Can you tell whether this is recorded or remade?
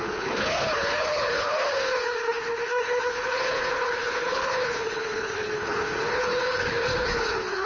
remade